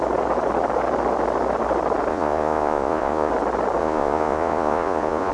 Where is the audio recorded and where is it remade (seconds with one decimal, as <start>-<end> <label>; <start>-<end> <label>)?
0.0-2.1 recorded; 2.1-3.3 remade; 3.3-3.8 recorded; 3.8-5.3 remade